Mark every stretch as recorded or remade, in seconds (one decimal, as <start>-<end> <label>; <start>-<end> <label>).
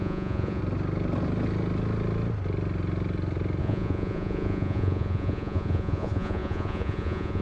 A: 0.0-0.6 remade; 0.6-3.6 recorded; 3.6-7.4 remade